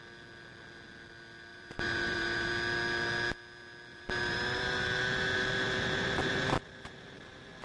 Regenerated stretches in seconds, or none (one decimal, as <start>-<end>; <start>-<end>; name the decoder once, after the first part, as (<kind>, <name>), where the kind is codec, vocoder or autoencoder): 1.5-2.5 (vocoder, BigVGAN v2); 3.9-7.6